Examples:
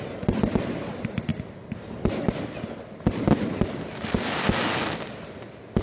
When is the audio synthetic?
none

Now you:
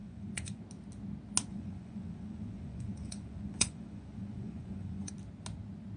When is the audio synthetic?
0.0-0.6; 1.5-5.1

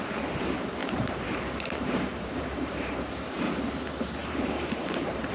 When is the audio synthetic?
0.8-3.4; 4.2-5.3

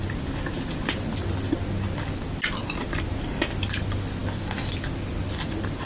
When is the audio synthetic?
none

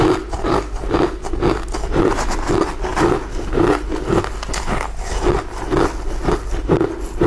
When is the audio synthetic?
none

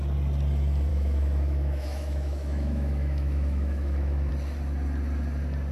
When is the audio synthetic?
0.9-4.3

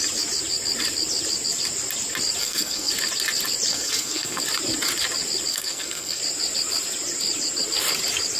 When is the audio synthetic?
2.4-2.9; 3.7-4.4; 5.5-6.2

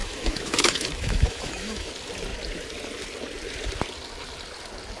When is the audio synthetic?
0.0-1.9